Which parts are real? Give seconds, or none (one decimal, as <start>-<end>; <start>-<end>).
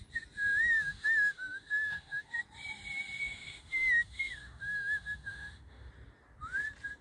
0.0-0.6; 2.3-3.2; 5.9-7.0